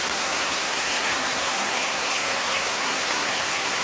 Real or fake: fake